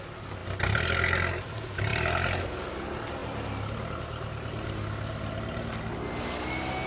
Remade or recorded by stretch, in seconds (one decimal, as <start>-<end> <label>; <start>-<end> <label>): 0.0-6.9 recorded